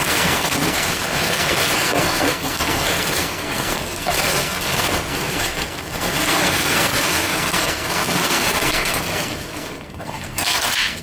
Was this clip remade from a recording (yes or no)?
yes